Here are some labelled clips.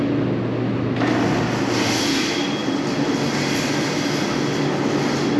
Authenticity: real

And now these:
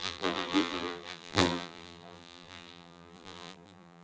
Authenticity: fake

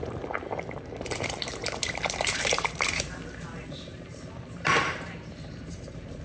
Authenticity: fake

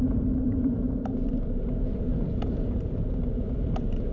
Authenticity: fake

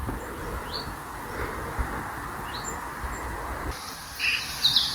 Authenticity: real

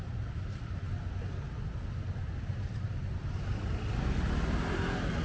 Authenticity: real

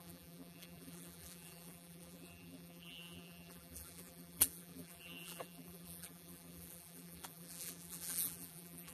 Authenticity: fake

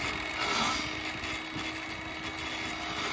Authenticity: real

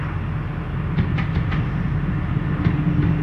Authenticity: real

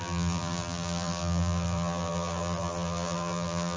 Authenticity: fake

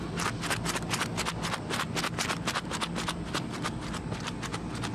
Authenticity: real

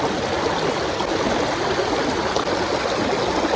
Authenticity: real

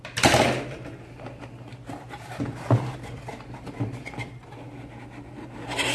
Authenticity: real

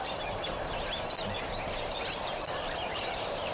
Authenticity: fake